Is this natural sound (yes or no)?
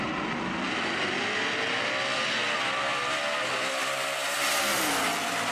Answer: yes